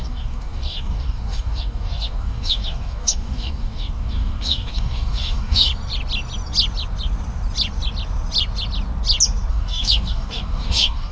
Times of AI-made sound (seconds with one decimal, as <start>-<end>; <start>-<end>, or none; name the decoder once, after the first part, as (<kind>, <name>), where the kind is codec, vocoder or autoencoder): 0.0-5.7 (codec, DAC); 9.5-11.1